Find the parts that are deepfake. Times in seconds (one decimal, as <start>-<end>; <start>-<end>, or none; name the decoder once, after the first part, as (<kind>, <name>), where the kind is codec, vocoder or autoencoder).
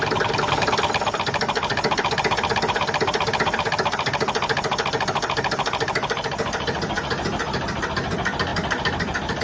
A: none